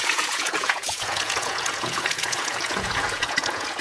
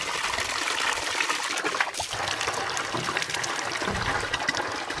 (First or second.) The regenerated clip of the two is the first